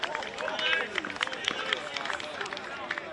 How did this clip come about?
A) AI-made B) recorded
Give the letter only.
B